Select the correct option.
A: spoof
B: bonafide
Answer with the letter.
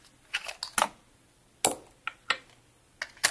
B